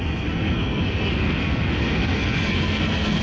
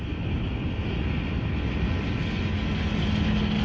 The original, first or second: second